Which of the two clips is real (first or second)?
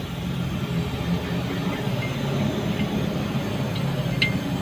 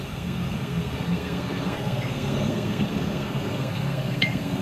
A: first